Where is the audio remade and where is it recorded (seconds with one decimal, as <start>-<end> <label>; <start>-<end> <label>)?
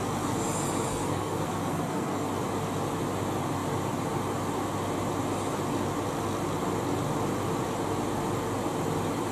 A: 0.0-0.9 recorded; 0.9-2.3 remade; 2.3-9.3 recorded